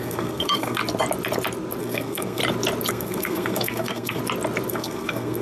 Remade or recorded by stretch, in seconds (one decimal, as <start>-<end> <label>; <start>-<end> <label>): 0.0-0.8 remade; 0.8-1.8 recorded; 1.8-2.4 remade; 2.4-2.9 recorded; 2.9-4.2 remade; 4.2-4.7 recorded; 4.7-5.4 remade